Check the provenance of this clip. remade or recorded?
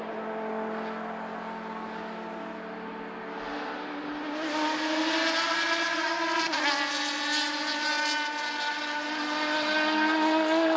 recorded